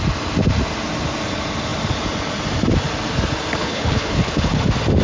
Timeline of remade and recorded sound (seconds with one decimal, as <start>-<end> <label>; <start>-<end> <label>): 0.0-3.6 recorded; 3.6-4.6 remade; 4.6-5.0 recorded